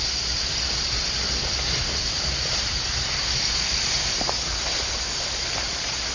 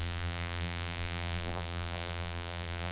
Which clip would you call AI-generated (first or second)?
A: second